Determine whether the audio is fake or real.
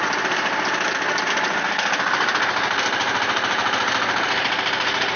real